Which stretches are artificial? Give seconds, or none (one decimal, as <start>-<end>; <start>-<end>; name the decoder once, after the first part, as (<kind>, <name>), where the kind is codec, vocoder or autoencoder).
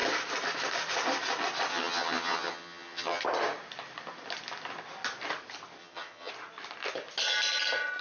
1.7-3.2 (vocoder, HiFi-GAN); 5.8-6.3